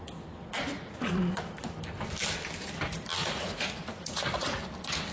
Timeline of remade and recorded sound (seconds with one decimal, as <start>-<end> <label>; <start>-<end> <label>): 0.0-0.7 recorded; 0.7-1.4 remade; 1.4-3.2 recorded; 3.2-4.6 remade; 4.6-5.1 recorded